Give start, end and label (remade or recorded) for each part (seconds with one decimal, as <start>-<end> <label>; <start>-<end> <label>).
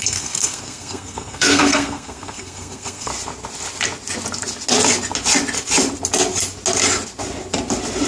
0.0-3.1 remade; 3.1-8.1 recorded